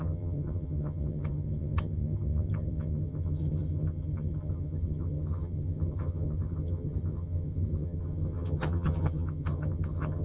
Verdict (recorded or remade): remade